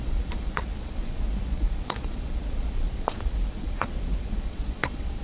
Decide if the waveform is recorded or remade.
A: remade